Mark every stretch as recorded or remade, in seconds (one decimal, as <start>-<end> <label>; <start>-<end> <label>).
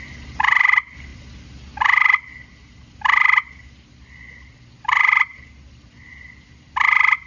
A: 0.0-7.3 recorded